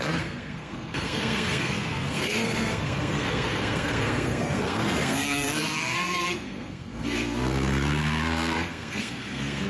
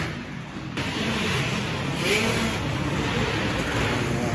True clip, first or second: second